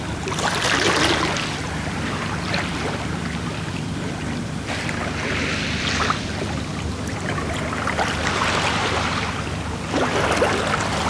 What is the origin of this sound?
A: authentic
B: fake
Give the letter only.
A